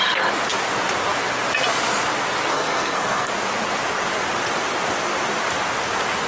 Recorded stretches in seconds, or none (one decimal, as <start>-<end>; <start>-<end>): 0.0-2.5; 3.3-6.3